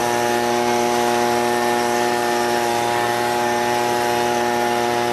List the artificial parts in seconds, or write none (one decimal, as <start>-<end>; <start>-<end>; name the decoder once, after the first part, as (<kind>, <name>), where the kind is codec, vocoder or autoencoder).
none